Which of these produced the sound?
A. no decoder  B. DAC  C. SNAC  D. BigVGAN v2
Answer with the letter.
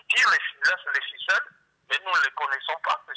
A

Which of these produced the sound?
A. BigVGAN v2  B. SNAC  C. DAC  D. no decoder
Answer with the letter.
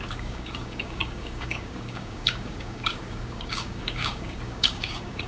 C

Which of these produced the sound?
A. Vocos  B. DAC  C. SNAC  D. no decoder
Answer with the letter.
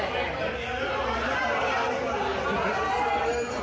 D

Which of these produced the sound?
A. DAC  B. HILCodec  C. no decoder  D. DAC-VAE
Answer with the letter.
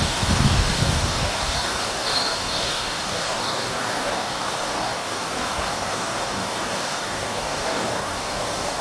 A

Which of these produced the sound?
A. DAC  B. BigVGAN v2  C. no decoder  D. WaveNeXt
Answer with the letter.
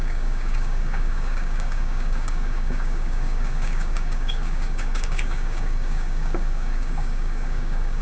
A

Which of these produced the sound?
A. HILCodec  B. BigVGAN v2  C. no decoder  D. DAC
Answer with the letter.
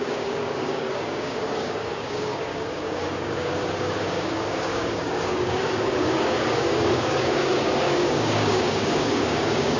D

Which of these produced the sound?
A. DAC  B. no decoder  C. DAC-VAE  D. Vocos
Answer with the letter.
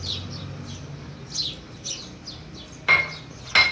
B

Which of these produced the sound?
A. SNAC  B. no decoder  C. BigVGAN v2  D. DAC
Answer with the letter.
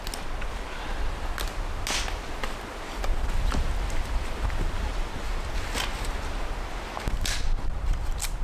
B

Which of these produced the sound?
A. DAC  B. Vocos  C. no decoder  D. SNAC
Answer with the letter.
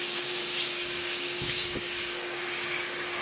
A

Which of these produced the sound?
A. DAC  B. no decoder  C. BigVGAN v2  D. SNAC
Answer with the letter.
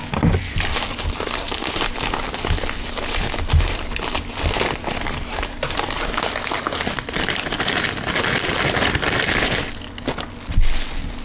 B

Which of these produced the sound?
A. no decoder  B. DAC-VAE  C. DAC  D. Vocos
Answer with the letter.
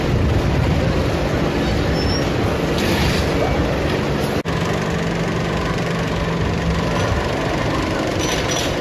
A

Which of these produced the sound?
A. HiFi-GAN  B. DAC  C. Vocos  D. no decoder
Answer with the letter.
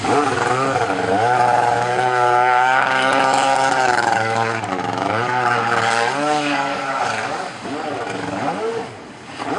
B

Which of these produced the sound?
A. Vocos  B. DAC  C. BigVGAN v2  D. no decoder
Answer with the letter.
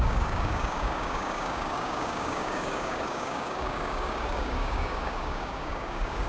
B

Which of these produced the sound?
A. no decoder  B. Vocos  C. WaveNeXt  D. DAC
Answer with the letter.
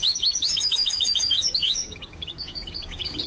D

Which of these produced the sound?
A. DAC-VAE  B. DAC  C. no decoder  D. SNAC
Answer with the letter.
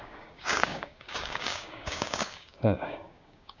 B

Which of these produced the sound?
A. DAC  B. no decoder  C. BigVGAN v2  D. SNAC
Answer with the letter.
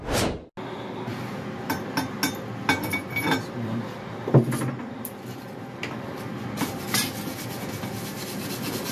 B